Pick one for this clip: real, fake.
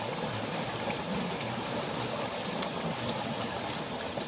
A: real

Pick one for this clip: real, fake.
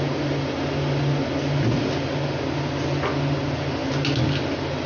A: real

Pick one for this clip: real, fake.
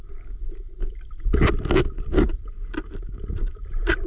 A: real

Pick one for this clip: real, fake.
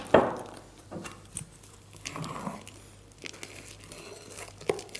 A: real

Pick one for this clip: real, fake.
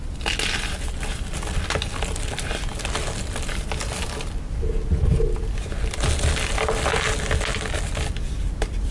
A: real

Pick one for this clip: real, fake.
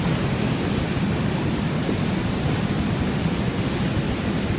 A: real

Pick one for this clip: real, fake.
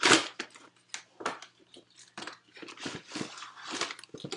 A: real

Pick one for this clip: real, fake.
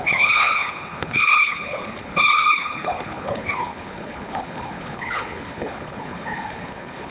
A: fake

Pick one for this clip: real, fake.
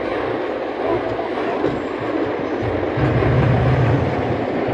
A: real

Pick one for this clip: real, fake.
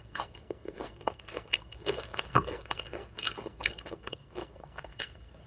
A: fake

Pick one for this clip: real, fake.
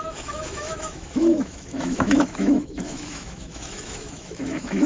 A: fake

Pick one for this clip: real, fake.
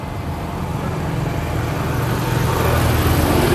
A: real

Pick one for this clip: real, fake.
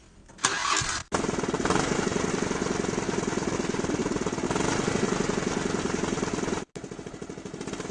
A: real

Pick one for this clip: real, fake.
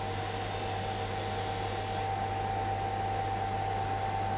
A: real